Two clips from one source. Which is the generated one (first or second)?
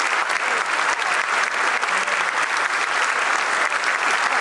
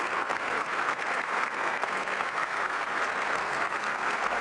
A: second